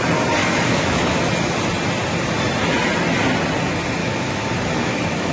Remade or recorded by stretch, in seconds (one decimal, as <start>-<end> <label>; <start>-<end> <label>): 0.0-0.4 recorded; 0.4-1.2 remade; 1.2-4.0 recorded; 4.0-5.3 remade